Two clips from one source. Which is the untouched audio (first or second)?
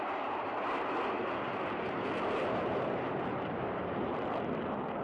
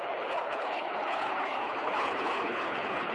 first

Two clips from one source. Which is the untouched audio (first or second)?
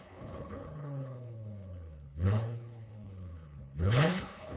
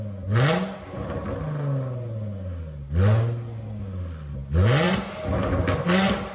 second